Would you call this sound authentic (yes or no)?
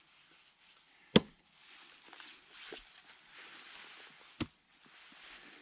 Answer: yes